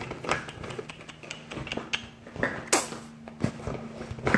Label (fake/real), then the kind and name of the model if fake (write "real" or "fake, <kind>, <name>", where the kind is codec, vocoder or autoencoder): real